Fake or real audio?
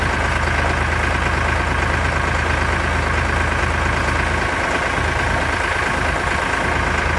real